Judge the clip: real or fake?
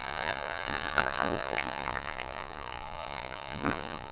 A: fake